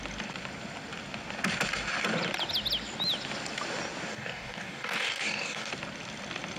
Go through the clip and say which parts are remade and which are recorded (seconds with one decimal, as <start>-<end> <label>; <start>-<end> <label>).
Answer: 0.0-4.1 recorded; 4.1-5.7 remade; 5.7-6.6 recorded